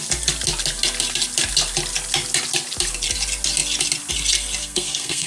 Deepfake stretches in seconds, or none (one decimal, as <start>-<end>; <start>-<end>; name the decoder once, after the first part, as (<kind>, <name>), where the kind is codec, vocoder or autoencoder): 4.6-5.3 (codec, SNAC)